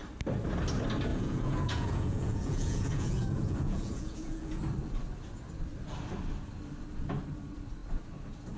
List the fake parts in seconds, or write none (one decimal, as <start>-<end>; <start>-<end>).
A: 1.1-4.6